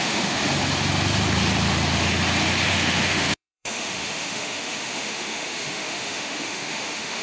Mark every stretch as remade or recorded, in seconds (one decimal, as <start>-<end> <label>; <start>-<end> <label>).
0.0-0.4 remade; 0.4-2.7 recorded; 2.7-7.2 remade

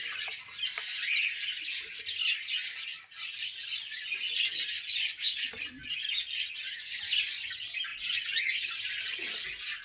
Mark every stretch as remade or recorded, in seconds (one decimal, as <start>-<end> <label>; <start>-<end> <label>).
0.0-9.8 recorded

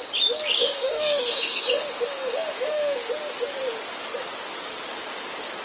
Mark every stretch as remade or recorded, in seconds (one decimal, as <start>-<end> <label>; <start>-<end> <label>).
0.0-0.6 recorded; 0.6-3.1 remade; 3.1-5.6 recorded

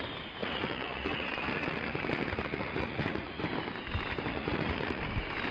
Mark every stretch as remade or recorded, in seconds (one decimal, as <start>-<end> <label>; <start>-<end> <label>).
0.0-0.4 recorded; 0.4-3.4 remade; 3.4-4.3 recorded; 4.3-5.0 remade; 5.0-5.5 recorded